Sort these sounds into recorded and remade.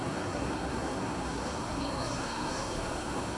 remade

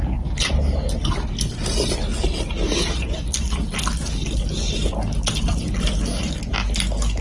recorded